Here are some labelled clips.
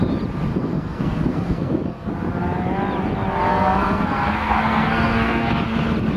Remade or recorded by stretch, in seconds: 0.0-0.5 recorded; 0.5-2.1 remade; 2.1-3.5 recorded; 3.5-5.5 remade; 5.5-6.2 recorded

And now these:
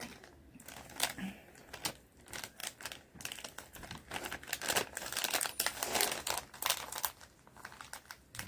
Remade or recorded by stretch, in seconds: 0.0-8.5 recorded

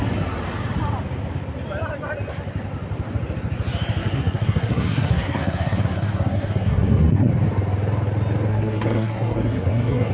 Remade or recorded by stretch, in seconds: 0.0-4.0 recorded; 4.0-7.3 remade; 7.3-8.5 recorded; 8.5-10.1 remade

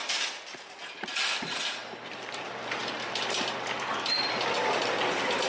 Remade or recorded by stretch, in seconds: 0.0-5.5 recorded

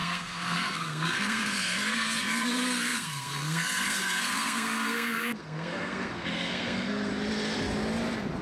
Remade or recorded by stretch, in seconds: 0.0-7.1 remade; 7.1-8.4 recorded

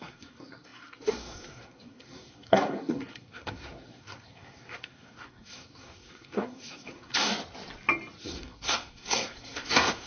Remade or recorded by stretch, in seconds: 0.0-7.3 remade; 7.3-8.2 recorded; 8.2-10.1 remade

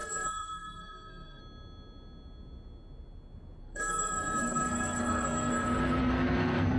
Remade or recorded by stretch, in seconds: 0.0-1.4 remade; 1.4-3.6 recorded; 3.6-5.5 remade; 5.5-6.0 recorded; 6.0-6.8 remade

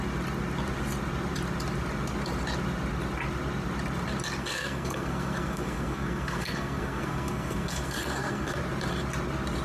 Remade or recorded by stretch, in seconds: 0.0-4.4 recorded; 4.4-8.6 remade; 8.6-9.6 recorded